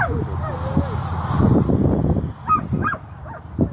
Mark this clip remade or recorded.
recorded